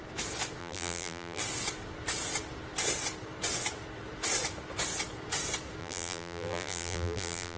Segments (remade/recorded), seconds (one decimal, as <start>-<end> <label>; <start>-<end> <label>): 0.0-0.6 recorded; 0.6-1.4 remade; 1.4-5.8 recorded; 5.8-7.6 remade